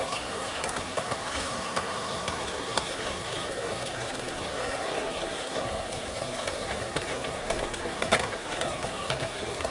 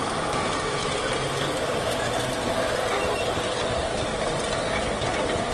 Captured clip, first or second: second